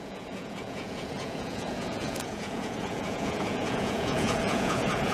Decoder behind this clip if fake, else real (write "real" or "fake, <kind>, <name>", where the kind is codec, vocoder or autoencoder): fake, vocoder, Vocos